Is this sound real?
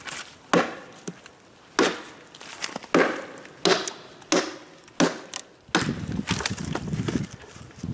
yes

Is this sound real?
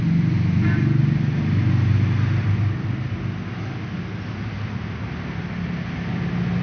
yes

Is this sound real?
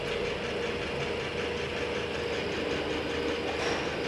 yes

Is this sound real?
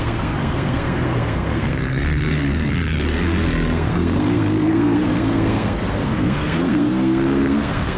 no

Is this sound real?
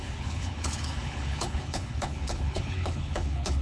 no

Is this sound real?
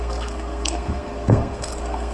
no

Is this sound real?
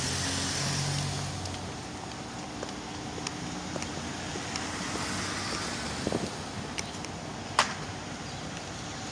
yes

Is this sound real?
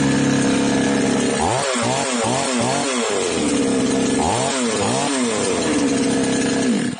yes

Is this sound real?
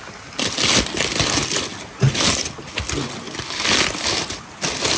yes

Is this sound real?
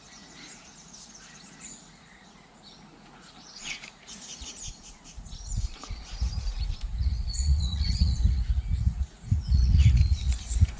no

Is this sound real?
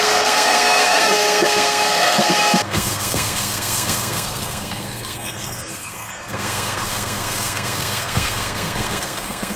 no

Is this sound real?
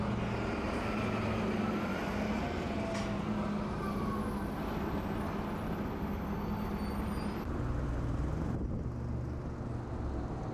yes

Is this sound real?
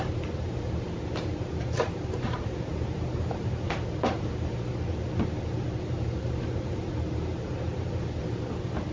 no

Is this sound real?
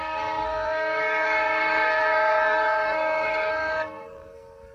no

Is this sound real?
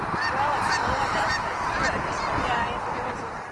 yes